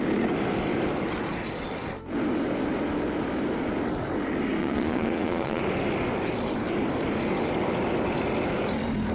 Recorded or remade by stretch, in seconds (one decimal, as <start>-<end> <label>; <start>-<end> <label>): 0.0-4.6 recorded; 4.6-5.6 remade; 5.6-9.1 recorded